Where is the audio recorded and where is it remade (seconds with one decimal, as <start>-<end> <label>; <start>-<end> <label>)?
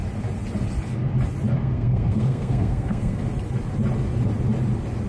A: 0.0-1.6 recorded; 1.6-3.2 remade; 3.2-5.1 recorded